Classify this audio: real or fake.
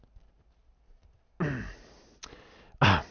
real